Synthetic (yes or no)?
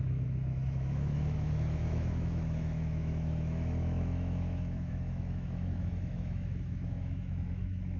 yes